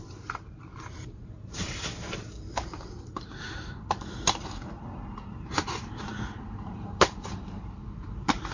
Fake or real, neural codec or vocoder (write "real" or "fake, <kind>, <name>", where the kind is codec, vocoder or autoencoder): fake, vocoder, BigVGAN v2